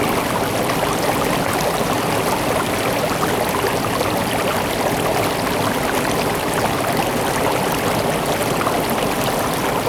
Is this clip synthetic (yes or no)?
no